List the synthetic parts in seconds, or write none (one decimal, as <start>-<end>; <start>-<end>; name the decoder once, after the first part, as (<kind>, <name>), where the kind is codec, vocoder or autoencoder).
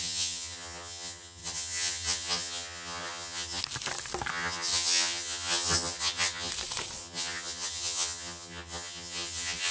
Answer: 0.0-3.6 (vocoder, HiFi-GAN); 4.3-6.5; 7.0-9.7